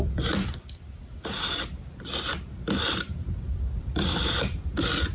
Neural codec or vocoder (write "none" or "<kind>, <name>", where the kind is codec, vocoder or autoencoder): none